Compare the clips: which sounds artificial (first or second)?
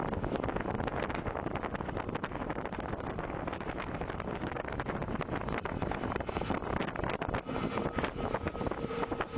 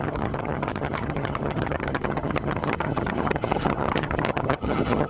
second